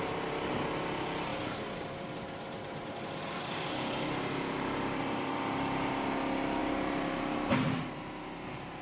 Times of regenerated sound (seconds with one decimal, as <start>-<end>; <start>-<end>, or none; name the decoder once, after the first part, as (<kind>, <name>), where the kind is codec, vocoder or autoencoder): 1.3-5.9 (vocoder, BigVGAN v2); 6.6-7.5